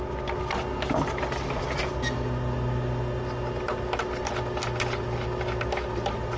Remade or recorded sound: recorded